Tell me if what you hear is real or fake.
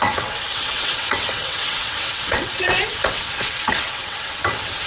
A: fake